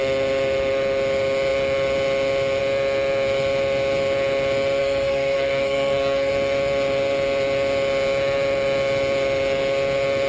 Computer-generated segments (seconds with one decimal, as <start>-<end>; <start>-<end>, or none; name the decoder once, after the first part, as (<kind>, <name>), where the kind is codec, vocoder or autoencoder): 4.8-6.3 (codec, SNAC)